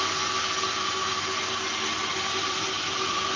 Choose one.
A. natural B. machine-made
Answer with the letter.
A